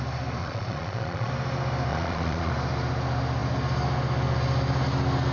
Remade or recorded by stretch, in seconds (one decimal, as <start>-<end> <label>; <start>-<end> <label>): 0.0-0.4 recorded; 0.4-1.3 remade; 1.3-1.9 recorded; 1.9-2.5 remade; 2.5-5.3 recorded